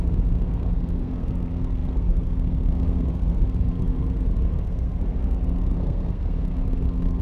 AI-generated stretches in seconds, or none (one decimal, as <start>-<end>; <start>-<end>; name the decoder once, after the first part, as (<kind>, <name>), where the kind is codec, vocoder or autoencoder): 0.0-7.2 (codec, SNAC)